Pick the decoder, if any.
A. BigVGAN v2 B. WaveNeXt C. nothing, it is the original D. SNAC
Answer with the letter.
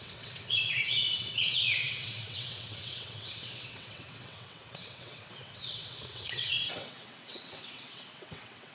B